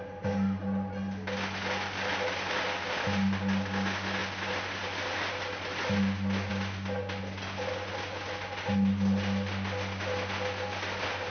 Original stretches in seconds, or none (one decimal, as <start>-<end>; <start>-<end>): 0.0-11.3